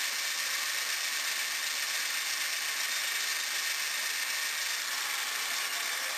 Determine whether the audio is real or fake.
real